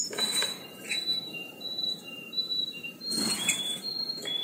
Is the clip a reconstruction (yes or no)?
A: yes